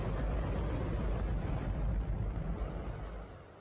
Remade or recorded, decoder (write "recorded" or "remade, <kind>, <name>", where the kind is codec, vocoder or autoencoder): recorded